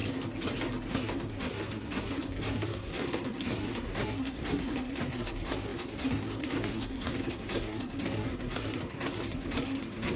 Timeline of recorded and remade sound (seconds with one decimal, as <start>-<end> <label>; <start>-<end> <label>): 0.0-0.9 recorded; 0.9-10.2 remade